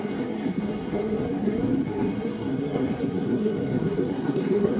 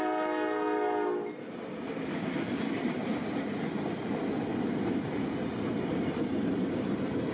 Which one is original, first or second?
second